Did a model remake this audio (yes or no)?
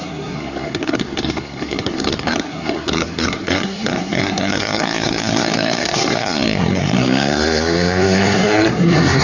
yes